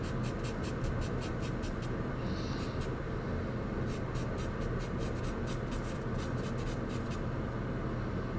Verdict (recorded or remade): recorded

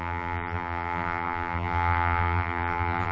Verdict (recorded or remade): remade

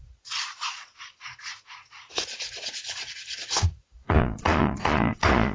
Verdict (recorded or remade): remade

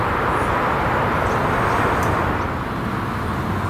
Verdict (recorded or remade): recorded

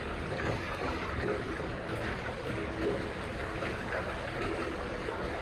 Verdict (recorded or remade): remade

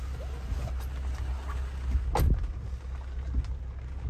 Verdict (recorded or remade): recorded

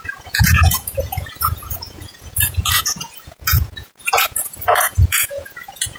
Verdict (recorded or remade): remade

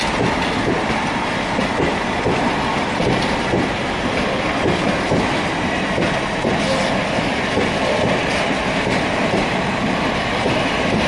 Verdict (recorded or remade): recorded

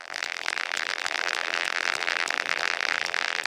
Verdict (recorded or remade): remade